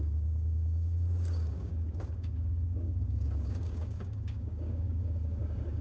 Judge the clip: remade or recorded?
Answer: remade